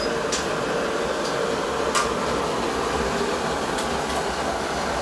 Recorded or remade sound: recorded